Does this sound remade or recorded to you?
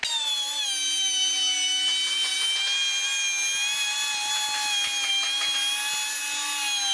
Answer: recorded